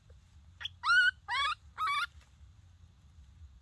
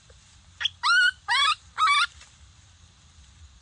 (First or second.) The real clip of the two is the first